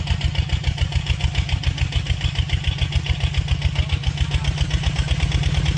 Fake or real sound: real